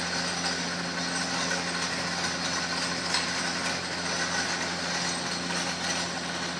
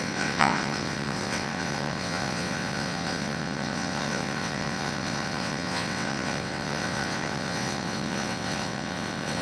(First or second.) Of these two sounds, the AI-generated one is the second